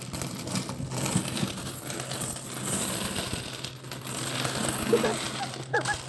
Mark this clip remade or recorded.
recorded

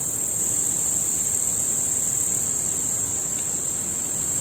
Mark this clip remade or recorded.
recorded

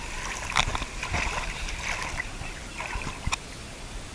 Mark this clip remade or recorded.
recorded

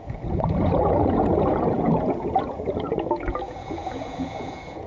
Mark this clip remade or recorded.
remade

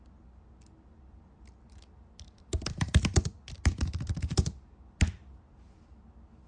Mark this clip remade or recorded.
recorded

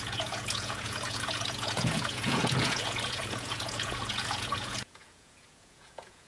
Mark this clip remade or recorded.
remade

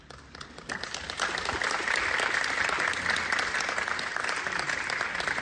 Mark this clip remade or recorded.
recorded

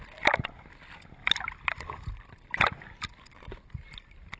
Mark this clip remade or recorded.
recorded